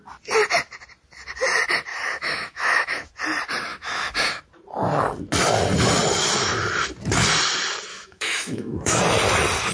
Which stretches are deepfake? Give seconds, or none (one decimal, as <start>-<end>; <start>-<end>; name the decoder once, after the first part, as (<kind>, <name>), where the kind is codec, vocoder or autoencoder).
1.9-3.1 (autoencoder, DAC-VAE); 3.7-4.4; 7.9-9.0